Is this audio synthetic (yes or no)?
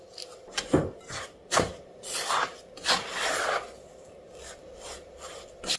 yes